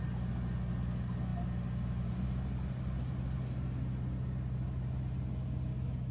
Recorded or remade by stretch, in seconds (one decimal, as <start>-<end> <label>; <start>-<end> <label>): 0.0-6.1 recorded